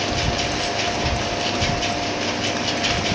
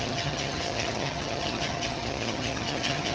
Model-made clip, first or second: second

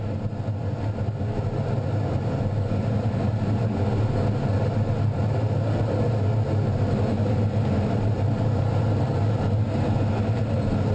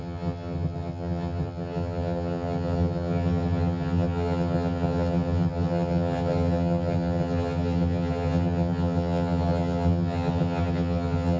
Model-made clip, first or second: second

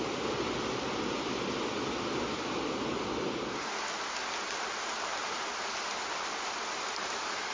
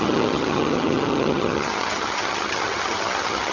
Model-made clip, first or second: second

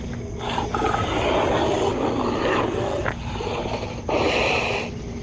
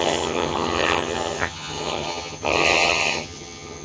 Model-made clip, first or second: second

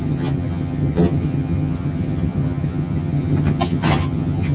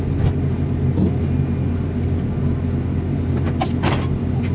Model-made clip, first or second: first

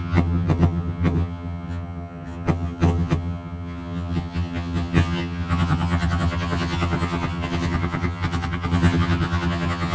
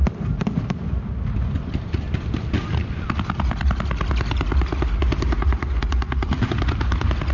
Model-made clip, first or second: first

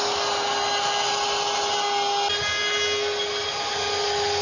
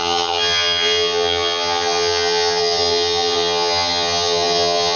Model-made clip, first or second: second